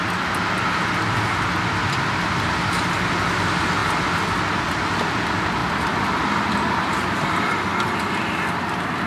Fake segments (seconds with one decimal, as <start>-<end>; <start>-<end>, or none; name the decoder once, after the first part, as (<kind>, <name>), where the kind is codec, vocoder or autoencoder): 5.6-7.6 (vocoder, BigVGAN v2)